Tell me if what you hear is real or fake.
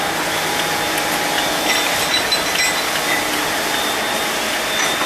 real